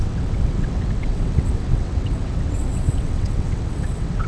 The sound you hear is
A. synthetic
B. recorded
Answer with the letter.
A